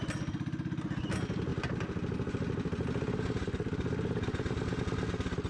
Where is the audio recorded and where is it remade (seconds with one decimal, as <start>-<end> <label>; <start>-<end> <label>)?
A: 0.0-5.5 recorded